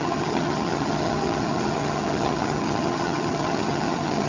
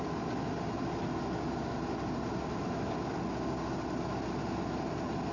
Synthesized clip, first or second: first